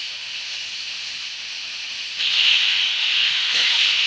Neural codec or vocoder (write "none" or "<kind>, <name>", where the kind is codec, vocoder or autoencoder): autoencoder, DAC-VAE